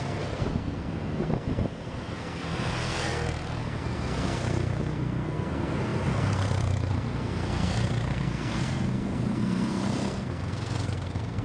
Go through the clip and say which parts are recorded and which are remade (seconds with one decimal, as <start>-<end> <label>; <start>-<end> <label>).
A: 0.0-11.4 remade